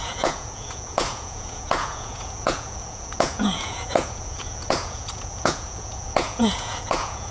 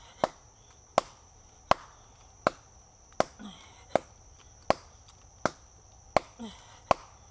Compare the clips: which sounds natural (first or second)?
second